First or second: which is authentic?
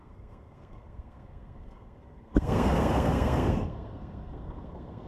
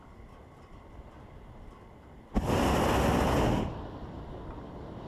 second